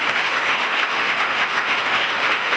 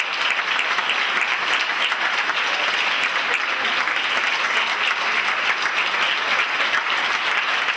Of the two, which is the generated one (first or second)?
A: first